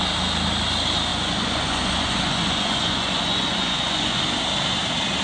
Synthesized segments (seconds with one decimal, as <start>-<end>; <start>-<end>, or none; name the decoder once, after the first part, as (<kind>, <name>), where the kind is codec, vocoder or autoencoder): 1.1-4.2 (vocoder, Vocos)